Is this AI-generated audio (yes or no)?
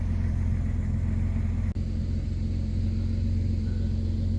no